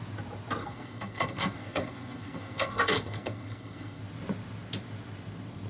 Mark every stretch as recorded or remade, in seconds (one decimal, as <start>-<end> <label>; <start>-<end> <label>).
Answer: 0.0-0.6 recorded; 0.6-4.0 remade; 4.0-5.7 recorded